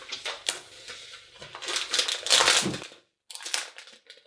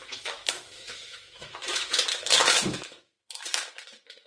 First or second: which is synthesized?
second